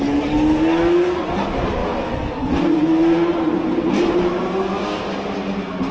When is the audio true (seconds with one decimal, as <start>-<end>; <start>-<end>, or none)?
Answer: 0.0-5.9

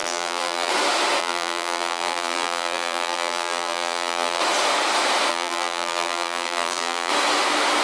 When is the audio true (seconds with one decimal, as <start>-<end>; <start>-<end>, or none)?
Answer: 0.7-1.2; 4.4-5.3; 7.1-7.8

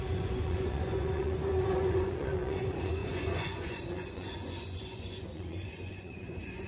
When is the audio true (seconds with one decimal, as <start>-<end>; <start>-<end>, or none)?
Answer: none

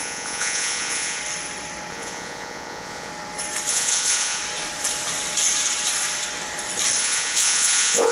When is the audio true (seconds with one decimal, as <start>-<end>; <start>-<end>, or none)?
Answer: 1.2-1.9; 3.1-3.7; 4.4-7.0

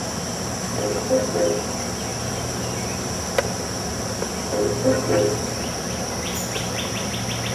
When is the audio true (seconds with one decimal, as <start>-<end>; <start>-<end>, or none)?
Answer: 0.0-2.1; 3.2-7.5

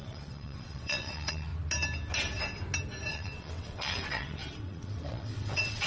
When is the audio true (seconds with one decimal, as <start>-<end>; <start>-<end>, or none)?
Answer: 1.5-3.1

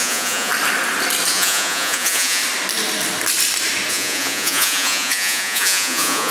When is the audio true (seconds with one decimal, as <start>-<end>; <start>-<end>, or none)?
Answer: 0.5-1.3; 2.4-3.9